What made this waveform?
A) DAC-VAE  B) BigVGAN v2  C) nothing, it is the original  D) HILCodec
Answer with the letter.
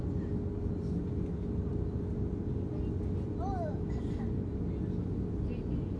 C